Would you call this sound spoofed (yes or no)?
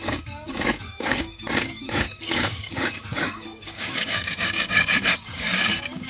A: yes